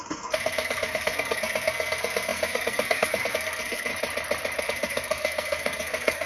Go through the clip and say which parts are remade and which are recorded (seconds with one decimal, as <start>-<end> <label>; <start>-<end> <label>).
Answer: 0.0-3.9 remade; 3.9-4.6 recorded; 4.6-6.3 remade